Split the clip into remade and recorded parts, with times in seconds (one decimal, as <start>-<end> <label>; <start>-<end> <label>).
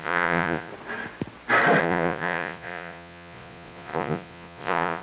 0.0-0.7 remade; 0.7-1.8 recorded; 1.8-5.0 remade